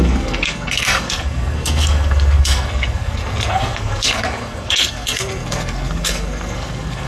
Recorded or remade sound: remade